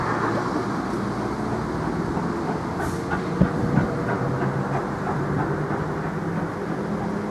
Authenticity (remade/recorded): recorded